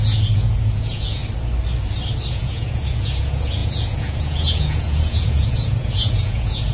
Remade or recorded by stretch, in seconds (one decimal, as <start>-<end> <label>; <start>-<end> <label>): 0.0-1.2 remade; 1.2-2.3 recorded; 2.3-6.7 remade